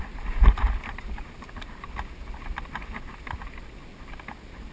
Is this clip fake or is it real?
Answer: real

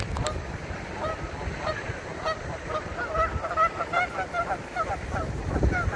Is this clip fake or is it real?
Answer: real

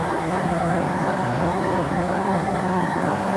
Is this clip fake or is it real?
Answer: fake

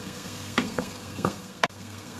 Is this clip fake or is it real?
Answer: fake